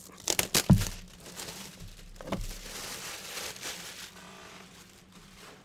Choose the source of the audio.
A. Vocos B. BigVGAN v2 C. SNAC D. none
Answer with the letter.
D